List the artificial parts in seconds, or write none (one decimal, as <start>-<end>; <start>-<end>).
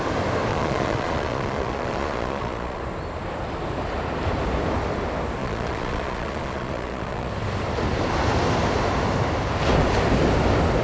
0.5-2.8; 5.4-7.3